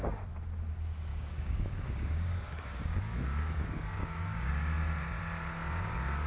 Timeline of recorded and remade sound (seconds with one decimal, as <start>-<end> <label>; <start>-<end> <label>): 0.0-1.1 recorded; 1.1-3.0 remade; 3.0-4.0 recorded; 4.0-4.5 remade; 4.5-6.3 recorded